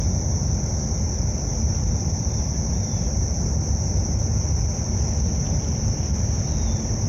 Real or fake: real